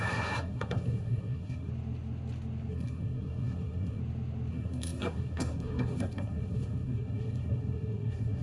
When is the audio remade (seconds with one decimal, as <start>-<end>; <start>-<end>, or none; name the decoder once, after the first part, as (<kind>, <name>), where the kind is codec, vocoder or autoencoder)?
0.0-1.7 (codec, SNAC); 2.7-4.0; 4.5-8.4